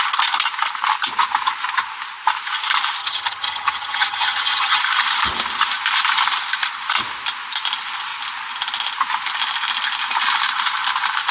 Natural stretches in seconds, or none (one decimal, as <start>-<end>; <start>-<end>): 0.0-3.0; 4.8-11.3

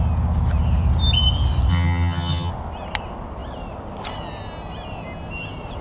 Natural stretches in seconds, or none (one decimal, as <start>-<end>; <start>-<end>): 0.0-1.7; 2.5-5.8

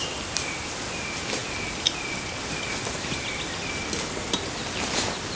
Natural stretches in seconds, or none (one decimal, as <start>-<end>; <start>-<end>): 0.0-5.4

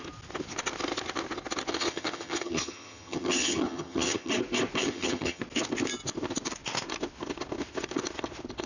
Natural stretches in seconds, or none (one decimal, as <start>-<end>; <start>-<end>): 0.0-1.7; 4.3-4.8; 5.4-8.7

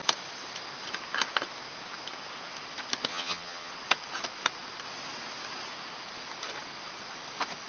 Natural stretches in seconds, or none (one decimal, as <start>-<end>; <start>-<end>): 0.0-3.1; 3.7-7.7

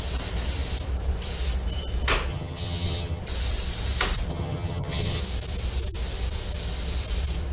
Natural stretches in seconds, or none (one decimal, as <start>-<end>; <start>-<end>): 0.0-2.3; 3.2-4.3; 5.2-7.5

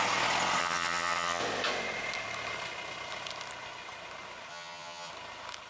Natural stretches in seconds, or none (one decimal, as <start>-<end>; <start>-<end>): 0.0-0.6; 1.4-4.5; 5.1-5.7